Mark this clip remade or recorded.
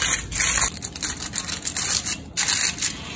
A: recorded